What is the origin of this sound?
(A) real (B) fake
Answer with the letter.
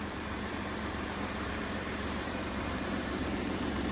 B